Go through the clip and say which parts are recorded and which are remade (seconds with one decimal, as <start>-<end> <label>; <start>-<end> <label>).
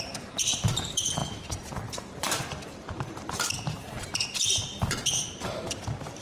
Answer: 0.0-6.2 remade